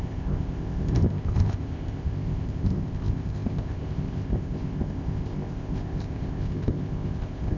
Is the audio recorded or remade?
remade